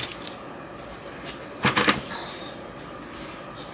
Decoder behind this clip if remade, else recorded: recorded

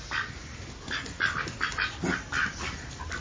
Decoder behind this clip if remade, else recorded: recorded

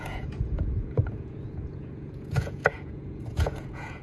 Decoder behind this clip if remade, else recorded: remade, vocoder, Vocos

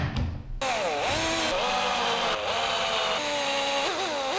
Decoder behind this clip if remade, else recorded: recorded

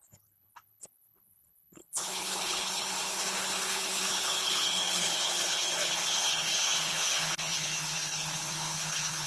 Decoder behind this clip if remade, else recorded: remade, codec, HILCodec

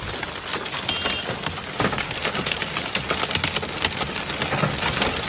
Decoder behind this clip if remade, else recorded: recorded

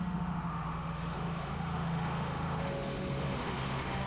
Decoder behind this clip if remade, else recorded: remade, autoencoder, DAC-VAE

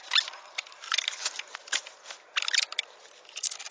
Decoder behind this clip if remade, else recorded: recorded